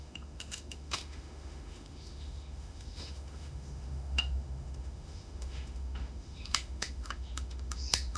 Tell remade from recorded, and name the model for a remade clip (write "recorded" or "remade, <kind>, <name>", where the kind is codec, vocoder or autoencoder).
remade, autoencoder, DAC-VAE